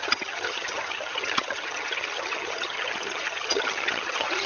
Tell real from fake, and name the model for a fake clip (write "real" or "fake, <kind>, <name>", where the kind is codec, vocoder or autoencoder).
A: fake, vocoder, HiFi-GAN